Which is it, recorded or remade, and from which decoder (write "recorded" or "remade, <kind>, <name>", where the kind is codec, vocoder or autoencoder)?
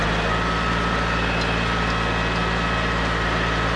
recorded